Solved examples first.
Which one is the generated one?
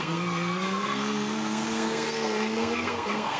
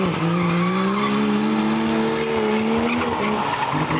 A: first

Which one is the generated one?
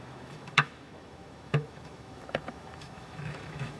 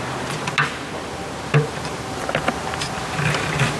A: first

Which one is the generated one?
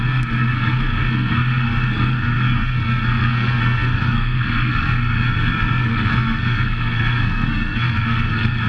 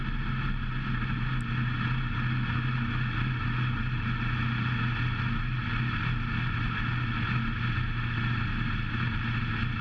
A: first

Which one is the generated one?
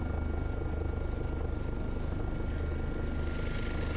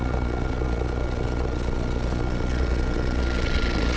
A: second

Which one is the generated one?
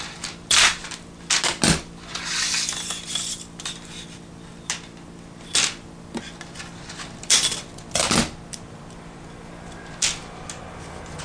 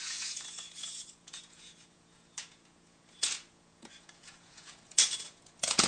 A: second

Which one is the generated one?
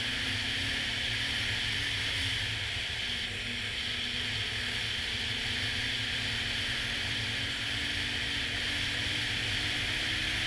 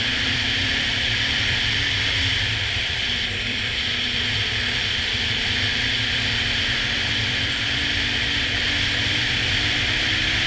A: second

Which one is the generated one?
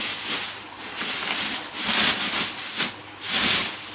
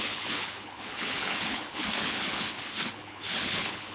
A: second